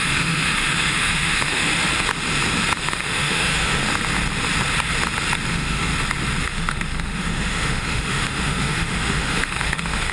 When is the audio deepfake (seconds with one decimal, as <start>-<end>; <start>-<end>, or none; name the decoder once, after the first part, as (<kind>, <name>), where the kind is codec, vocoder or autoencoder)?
0.0-1.7 (autoencoder, DAC-VAE); 2.8-3.8; 5.5-5.9; 6.4-10.1